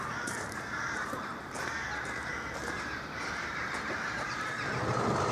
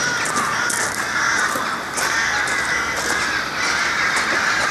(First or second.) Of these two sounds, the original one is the second